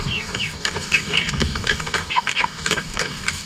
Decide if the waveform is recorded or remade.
remade